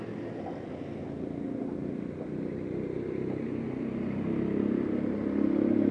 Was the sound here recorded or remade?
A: recorded